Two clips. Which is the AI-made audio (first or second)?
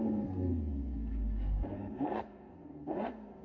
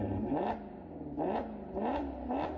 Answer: first